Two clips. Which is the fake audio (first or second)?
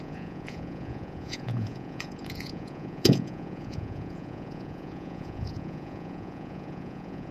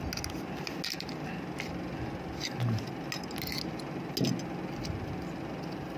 first